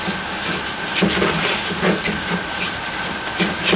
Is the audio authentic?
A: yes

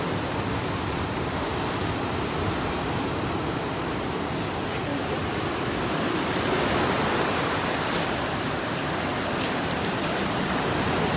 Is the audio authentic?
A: no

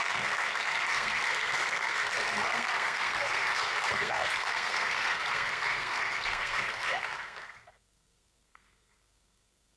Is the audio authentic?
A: no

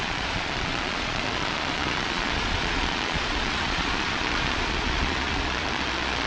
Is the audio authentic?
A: no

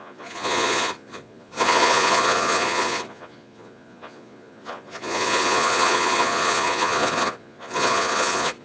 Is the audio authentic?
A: no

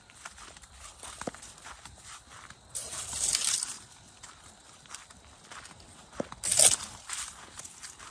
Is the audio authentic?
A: yes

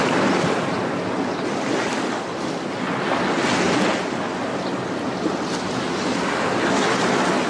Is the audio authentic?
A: yes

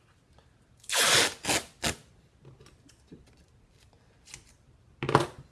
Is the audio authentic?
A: yes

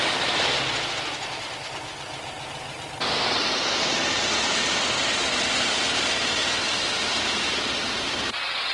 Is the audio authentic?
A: yes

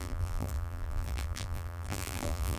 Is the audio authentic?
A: no